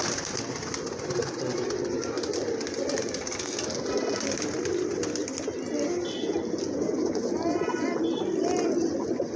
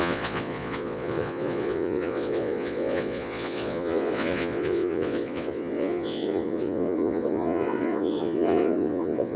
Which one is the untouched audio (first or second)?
first